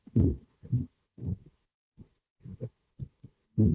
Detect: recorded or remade remade